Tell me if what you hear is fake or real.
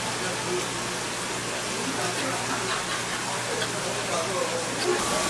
real